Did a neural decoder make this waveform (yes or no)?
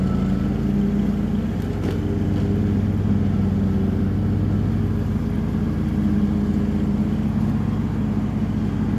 no